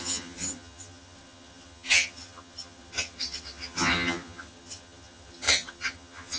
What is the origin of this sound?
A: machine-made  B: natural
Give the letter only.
A